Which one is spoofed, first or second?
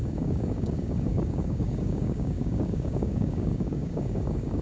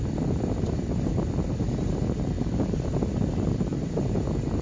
first